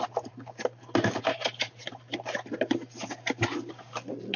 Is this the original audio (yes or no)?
yes